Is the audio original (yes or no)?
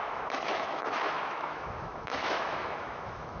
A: no